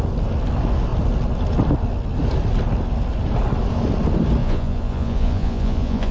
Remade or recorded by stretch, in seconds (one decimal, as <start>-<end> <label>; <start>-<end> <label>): 0.0-4.4 recorded; 4.4-6.1 remade